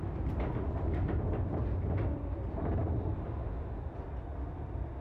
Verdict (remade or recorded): recorded